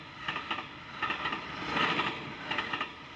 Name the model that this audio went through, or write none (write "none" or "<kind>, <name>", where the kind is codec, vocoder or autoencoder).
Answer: none